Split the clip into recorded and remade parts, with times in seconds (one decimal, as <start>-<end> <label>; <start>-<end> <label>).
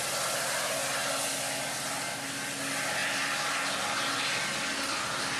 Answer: 0.0-5.4 recorded